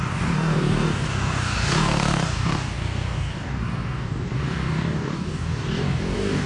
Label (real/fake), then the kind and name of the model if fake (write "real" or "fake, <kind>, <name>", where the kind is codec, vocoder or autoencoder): fake, codec, DAC